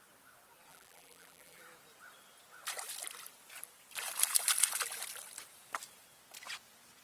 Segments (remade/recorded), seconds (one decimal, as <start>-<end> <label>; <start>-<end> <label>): 0.0-0.7 recorded; 0.7-1.6 remade; 1.6-7.0 recorded